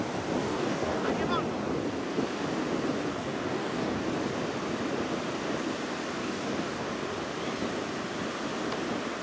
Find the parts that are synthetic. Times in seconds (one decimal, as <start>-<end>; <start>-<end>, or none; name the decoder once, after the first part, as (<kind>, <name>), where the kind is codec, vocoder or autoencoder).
0.4-1.1 (codec, DAC); 3.1-4.0; 6.2-6.9